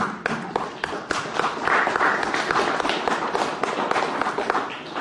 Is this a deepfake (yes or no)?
no